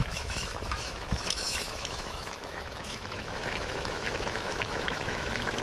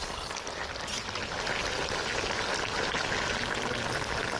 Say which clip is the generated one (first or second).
first